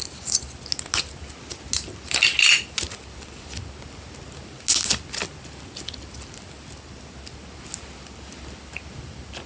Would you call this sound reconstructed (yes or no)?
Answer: no